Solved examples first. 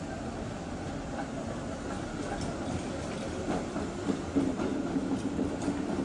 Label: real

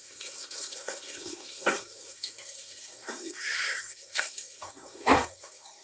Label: fake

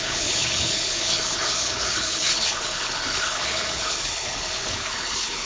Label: fake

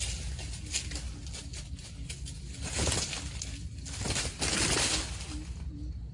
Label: real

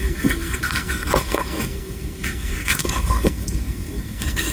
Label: fake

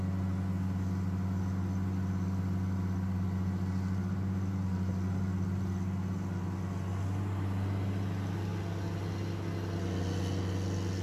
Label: real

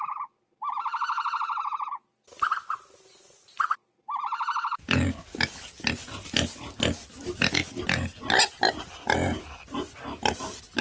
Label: real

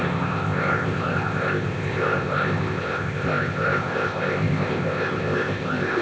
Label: fake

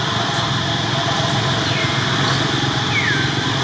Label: real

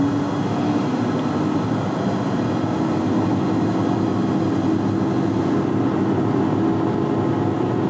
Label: real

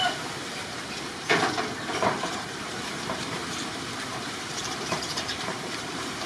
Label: fake